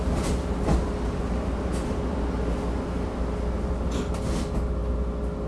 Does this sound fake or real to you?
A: real